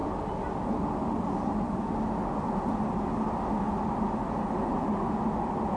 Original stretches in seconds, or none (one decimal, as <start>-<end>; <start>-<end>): 0.0-5.8